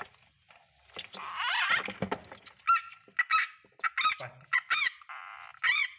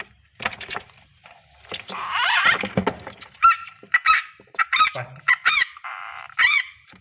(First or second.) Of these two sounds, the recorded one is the first